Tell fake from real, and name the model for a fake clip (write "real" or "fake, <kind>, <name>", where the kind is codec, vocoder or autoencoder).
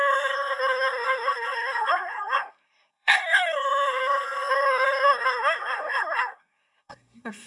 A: fake, codec, SNAC